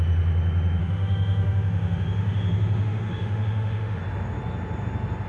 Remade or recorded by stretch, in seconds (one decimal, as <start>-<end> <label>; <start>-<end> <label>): 0.0-0.8 recorded; 0.8-4.0 remade; 4.0-5.3 recorded